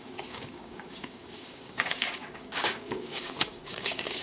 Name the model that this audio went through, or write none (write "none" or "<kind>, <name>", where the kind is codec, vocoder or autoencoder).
codec, DAC